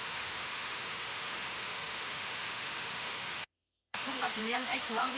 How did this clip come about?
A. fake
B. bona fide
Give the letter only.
A